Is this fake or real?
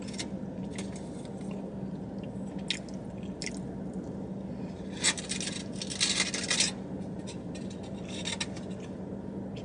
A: real